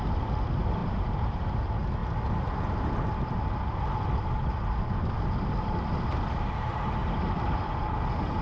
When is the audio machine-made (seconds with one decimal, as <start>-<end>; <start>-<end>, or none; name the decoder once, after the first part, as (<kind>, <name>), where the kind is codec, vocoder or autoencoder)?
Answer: 0.8-1.5 (vocoder, BigVGAN v2); 7.0-7.9